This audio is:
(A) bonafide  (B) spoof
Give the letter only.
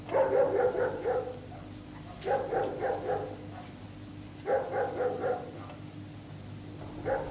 A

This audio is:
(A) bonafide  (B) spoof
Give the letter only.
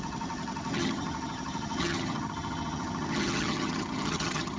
B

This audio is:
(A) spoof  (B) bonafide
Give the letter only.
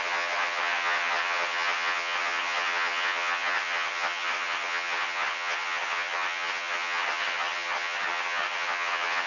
A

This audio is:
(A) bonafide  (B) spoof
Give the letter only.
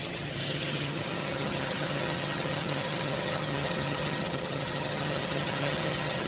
B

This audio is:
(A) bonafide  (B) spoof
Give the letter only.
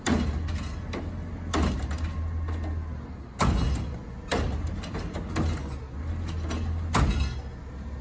A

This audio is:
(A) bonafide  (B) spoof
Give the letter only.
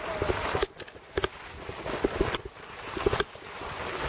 A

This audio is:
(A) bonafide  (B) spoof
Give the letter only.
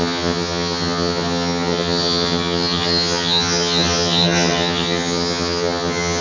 B